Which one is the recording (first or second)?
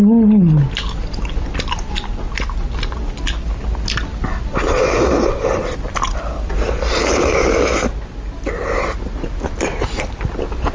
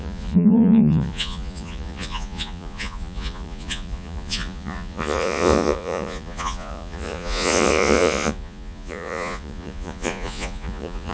first